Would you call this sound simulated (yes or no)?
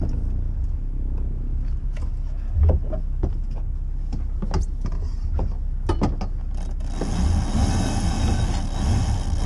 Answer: no